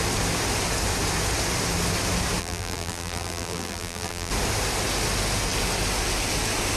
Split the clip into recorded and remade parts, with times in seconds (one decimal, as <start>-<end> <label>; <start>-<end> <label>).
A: 0.0-2.4 recorded; 2.4-4.3 remade; 4.3-6.8 recorded